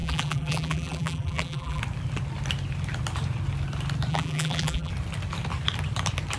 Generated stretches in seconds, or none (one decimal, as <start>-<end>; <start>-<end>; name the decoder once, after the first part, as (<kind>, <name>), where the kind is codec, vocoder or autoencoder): 0.0-1.8 (vocoder, BigVGAN v2); 4.1-4.9

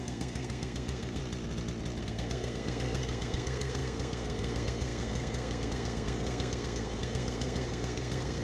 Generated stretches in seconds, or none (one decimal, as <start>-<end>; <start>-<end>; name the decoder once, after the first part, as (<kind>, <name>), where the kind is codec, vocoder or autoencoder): 0.0-1.2 (codec, SNAC); 2.0-8.4

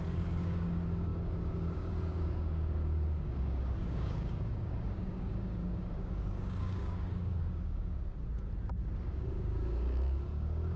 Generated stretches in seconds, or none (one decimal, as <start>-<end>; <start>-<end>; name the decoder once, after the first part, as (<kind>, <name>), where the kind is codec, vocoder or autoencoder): 0.0-8.1 (codec, DAC); 9.0-10.8